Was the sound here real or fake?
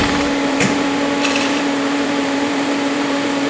fake